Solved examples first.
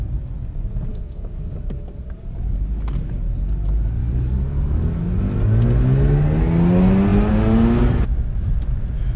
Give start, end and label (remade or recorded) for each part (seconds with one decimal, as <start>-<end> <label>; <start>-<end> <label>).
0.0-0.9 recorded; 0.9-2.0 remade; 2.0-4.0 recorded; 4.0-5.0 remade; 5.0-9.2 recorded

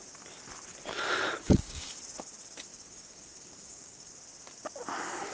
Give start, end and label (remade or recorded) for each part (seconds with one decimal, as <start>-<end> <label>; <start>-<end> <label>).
0.0-1.4 recorded; 1.4-1.9 remade; 1.9-2.7 recorded; 2.7-4.1 remade; 4.1-5.3 recorded

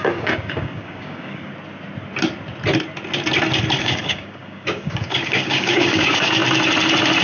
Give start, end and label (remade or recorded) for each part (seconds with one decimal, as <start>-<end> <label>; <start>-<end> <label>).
0.0-1.5 remade; 1.5-3.8 recorded; 3.8-6.4 remade; 6.4-7.2 recorded

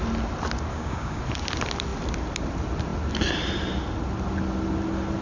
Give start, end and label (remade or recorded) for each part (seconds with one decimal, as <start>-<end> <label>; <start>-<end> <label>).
0.0-0.7 recorded; 0.7-1.2 remade; 1.2-5.2 recorded